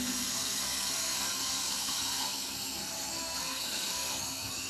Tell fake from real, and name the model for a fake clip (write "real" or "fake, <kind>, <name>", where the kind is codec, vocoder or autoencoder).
fake, codec, SNAC